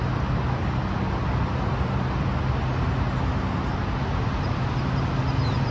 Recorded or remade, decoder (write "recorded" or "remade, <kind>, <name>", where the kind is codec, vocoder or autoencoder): recorded